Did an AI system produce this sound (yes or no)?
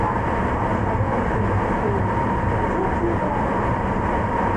no